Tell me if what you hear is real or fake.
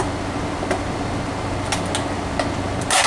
real